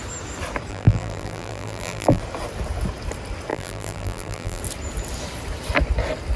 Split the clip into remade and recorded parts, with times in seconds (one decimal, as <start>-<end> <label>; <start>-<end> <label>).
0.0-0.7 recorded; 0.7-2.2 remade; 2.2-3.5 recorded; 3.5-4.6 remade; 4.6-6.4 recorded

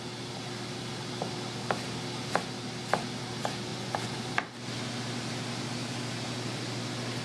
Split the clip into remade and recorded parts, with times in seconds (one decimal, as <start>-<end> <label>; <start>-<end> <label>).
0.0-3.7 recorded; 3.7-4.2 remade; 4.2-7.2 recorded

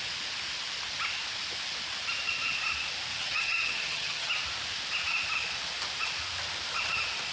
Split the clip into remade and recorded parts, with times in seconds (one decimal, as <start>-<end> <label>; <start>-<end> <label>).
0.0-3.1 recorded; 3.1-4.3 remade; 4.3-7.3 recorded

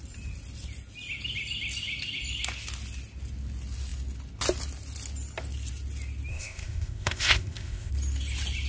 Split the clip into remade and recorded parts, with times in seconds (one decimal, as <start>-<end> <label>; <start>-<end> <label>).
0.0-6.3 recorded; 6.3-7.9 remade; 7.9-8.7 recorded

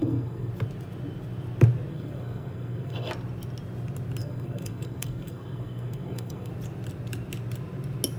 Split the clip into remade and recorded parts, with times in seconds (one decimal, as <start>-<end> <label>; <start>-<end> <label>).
0.0-0.5 remade; 0.5-1.9 recorded; 1.9-3.1 remade; 3.1-4.2 recorded; 4.2-6.5 remade; 6.5-8.2 recorded

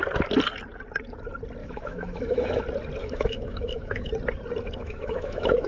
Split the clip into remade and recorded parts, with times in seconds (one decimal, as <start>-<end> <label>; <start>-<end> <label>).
0.0-1.6 recorded; 1.6-2.6 remade; 2.6-3.0 recorded; 3.0-4.1 remade; 4.1-4.8 recorded; 4.8-5.7 remade

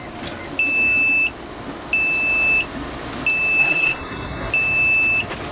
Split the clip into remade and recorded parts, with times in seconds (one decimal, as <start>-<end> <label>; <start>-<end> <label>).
0.0-3.6 recorded; 3.6-4.5 remade; 4.5-5.5 recorded